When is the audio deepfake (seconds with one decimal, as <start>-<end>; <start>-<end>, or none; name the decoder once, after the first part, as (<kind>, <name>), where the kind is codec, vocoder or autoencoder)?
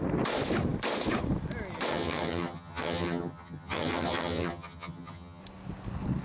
1.9-5.4 (vocoder, HiFi-GAN)